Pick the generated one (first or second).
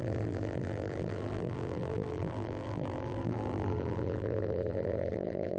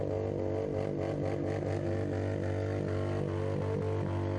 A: first